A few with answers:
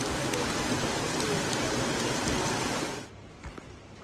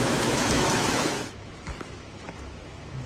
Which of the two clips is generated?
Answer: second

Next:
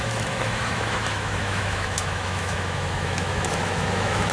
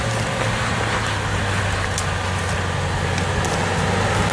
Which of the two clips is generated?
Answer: first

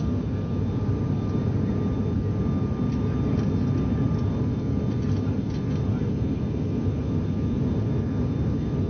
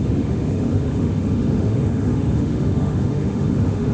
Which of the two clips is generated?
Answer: second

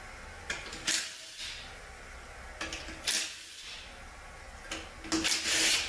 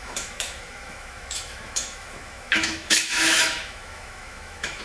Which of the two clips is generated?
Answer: second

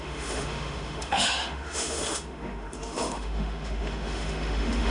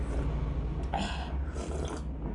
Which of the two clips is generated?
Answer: first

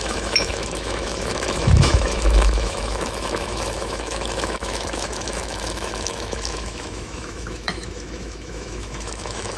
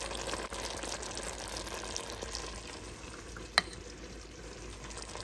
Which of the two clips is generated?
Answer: first